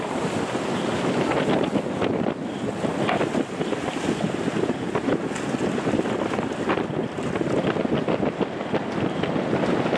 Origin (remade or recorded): recorded